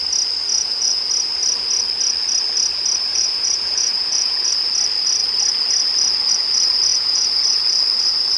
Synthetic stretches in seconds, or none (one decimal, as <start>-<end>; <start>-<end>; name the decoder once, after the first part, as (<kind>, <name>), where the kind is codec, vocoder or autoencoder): 0.5-1.1 (vocoder, Vocos); 3.1-4.5; 6.9-7.6